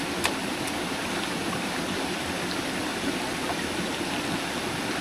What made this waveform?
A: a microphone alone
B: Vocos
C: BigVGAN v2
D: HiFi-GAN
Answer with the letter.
A